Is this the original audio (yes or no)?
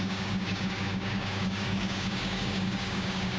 no